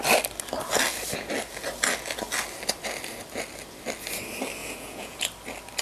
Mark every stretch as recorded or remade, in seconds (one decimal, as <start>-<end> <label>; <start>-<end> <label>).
0.0-4.6 recorded; 4.6-5.2 remade; 5.2-5.8 recorded